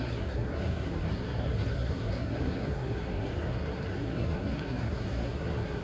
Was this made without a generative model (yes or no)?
no